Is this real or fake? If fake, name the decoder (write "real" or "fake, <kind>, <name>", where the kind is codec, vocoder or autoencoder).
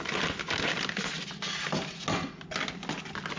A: real